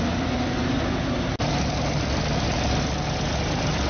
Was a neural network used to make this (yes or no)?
no